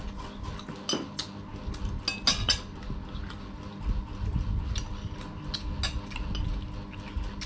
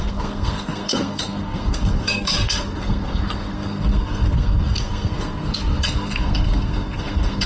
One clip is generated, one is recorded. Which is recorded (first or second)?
first